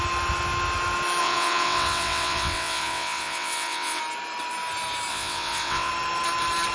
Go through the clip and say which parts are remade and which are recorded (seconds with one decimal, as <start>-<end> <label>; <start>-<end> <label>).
0.0-1.2 recorded; 1.2-4.0 remade; 4.0-5.1 recorded; 5.1-5.9 remade; 5.9-6.7 recorded